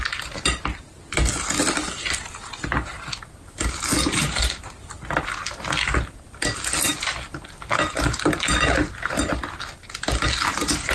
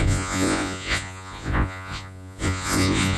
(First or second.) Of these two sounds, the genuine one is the first